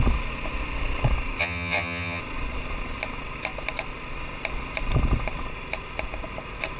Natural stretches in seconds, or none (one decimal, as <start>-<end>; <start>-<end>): 0.0-1.4; 2.2-6.8